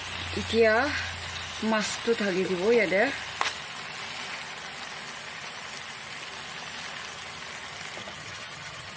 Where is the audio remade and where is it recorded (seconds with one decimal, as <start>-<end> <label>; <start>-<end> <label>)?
0.0-8.0 recorded; 8.0-9.0 remade

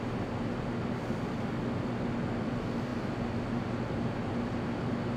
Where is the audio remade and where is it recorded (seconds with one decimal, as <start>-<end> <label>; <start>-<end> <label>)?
0.0-5.2 recorded